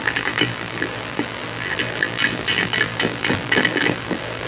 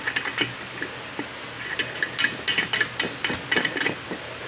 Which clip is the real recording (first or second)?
second